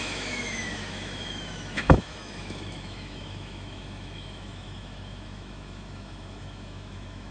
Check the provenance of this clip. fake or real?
fake